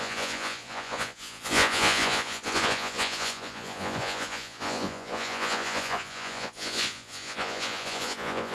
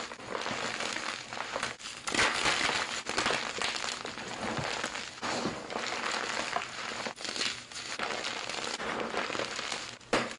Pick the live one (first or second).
second